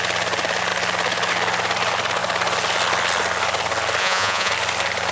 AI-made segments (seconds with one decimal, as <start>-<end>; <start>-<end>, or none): 4.0-4.5